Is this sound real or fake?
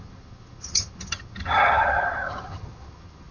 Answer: fake